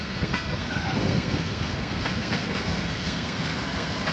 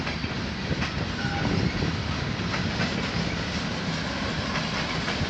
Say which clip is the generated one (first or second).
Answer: first